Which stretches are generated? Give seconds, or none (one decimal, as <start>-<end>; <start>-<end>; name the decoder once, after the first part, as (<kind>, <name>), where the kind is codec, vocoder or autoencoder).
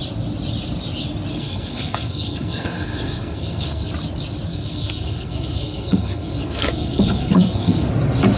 1.3-3.9 (codec, SNAC); 4.5-7.9